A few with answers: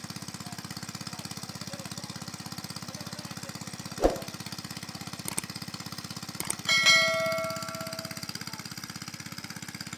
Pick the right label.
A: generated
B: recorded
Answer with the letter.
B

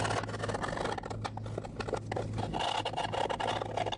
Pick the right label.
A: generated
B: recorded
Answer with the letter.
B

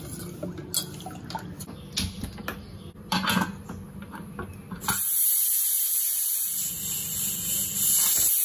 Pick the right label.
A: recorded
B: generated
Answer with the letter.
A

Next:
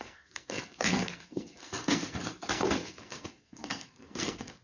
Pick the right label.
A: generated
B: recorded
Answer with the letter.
A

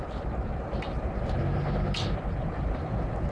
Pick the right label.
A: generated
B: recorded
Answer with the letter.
B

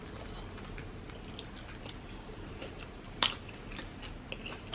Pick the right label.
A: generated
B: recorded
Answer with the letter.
B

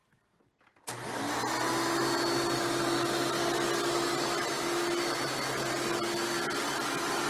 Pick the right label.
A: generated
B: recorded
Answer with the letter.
B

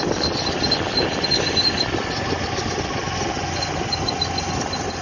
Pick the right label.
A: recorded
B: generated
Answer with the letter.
A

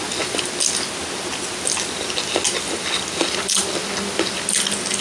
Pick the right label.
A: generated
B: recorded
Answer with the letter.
B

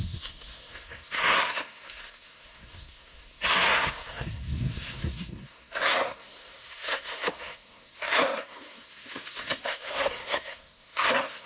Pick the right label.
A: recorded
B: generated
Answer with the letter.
B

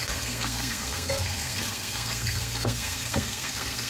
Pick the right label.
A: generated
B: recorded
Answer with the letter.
A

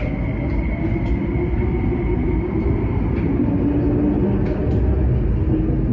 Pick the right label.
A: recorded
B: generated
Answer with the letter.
A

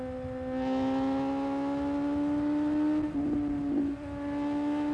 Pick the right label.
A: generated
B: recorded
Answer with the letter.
B